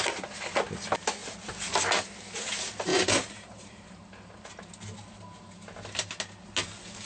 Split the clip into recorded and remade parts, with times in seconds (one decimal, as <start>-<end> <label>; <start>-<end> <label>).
0.0-2.9 recorded; 2.9-4.3 remade; 4.3-7.1 recorded